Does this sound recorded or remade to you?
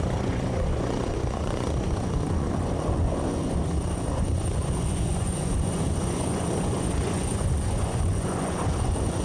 remade